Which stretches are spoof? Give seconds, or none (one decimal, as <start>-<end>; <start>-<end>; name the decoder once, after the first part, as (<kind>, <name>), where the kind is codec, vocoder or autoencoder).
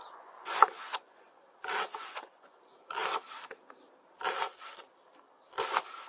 0.0-1.4 (vocoder, Vocos); 2.0-2.6